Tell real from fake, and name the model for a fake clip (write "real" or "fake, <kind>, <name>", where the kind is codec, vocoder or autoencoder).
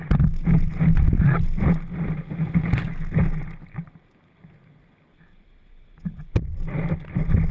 real